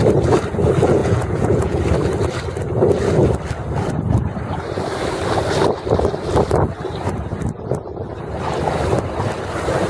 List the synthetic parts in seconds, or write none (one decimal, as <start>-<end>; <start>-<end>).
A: 1.0-1.8